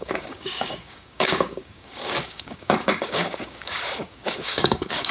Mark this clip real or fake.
fake